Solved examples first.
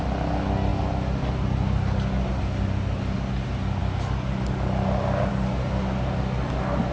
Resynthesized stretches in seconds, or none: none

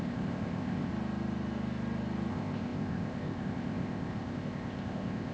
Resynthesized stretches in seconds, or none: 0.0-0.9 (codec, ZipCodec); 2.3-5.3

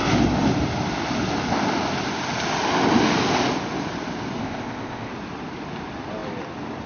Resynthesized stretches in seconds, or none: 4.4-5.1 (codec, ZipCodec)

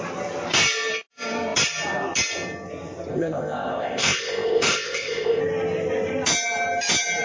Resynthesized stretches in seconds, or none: 3.1-5.4 (codec, ZipCodec)

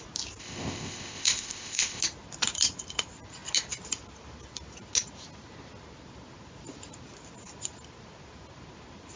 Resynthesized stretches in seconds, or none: 0.4-2.0 (codec, ZipCodec)